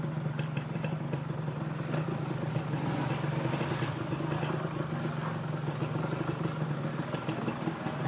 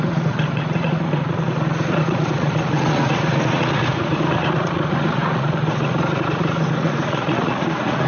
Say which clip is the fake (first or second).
second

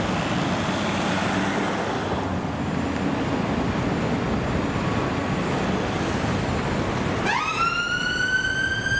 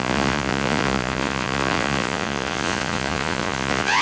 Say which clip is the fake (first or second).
second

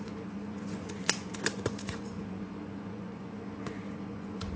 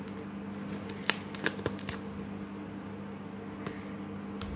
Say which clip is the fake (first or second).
first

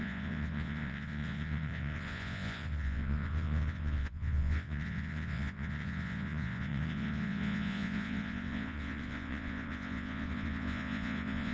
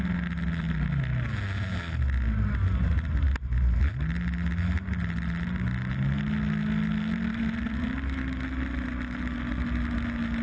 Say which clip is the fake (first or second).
first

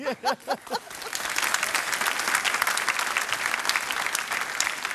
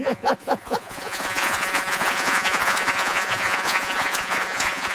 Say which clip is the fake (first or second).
second